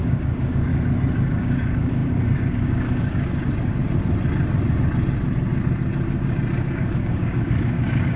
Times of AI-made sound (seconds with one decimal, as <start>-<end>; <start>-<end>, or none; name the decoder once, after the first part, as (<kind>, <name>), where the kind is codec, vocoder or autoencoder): 0.0-0.7 (codec, DAC); 1.4-3.4; 6.7-8.2